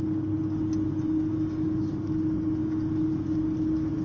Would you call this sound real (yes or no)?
yes